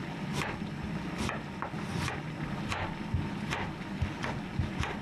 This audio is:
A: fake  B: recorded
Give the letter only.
B